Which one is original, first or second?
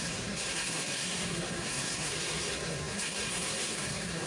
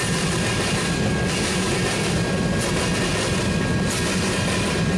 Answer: second